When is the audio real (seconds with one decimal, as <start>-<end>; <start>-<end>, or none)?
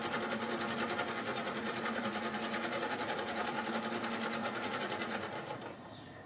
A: 0.0-1.3; 3.7-4.4; 5.6-6.3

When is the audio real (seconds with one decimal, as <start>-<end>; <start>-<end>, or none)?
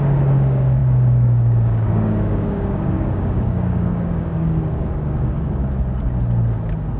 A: 5.6-7.0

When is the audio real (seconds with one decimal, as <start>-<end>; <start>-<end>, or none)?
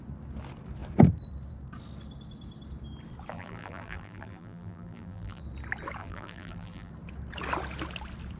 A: 0.0-3.3; 5.4-6.0; 6.9-8.4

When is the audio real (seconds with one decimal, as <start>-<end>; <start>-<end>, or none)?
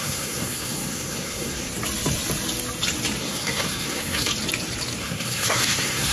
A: 1.7-3.2; 4.3-5.0